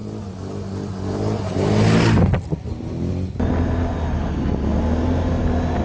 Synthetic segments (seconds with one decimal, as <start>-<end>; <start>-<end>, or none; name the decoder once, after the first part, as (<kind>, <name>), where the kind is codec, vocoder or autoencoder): none